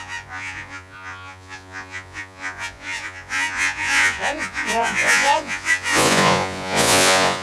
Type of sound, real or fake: fake